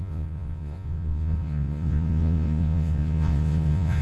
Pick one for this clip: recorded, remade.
remade